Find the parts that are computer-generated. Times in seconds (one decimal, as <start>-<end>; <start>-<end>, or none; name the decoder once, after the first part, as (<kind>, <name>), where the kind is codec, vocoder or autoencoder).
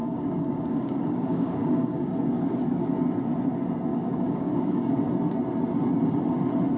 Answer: 0.0-2.1 (codec, DAC); 3.9-4.9